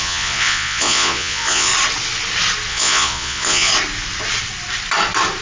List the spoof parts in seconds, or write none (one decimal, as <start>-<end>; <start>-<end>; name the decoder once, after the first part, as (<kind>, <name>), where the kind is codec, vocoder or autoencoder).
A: 0.0-1.7 (vocoder, Vocos); 2.7-3.7